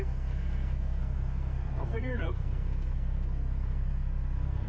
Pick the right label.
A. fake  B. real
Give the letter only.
A